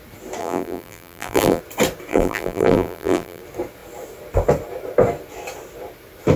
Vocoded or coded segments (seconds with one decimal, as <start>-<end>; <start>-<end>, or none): 0.4-1.6; 2.1-3.4